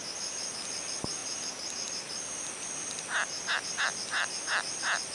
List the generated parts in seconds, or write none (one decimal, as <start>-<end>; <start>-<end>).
none